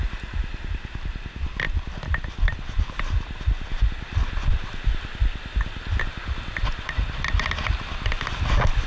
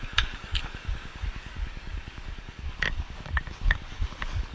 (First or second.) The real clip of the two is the first